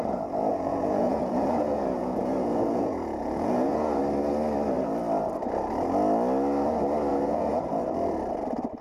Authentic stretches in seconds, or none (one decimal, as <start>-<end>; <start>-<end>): 0.0-0.5; 4.0-7.1; 7.6-8.8